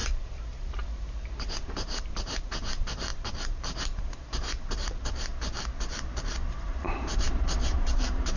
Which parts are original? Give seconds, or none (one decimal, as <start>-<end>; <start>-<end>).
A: 5.3-6.1